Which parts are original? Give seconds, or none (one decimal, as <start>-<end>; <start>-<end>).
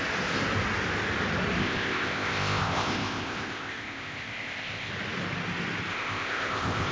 0.0-1.6; 4.9-5.9